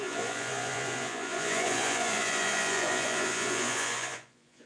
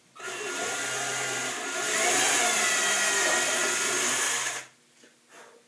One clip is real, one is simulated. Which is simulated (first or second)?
first